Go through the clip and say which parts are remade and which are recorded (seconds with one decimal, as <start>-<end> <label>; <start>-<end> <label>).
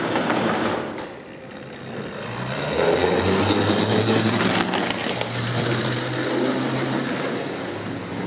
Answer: 0.0-8.3 recorded